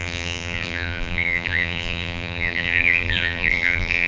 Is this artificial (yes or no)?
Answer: yes